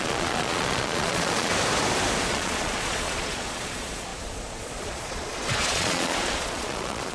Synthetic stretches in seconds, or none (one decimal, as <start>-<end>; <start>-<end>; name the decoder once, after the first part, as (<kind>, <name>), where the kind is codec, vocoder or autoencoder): 0.0-1.5 (vocoder, Vocos); 2.3-7.1